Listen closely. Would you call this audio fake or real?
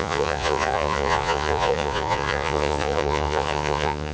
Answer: fake